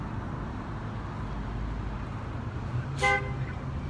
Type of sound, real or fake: real